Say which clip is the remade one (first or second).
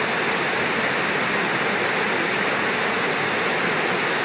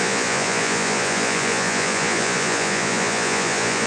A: second